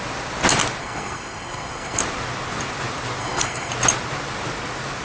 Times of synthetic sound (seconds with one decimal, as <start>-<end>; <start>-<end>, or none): 0.8-2.0; 3.2-3.7